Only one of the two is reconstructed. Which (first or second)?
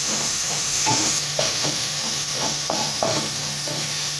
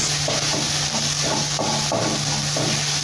first